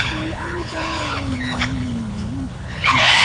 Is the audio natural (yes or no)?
no